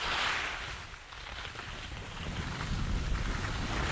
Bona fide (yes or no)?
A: yes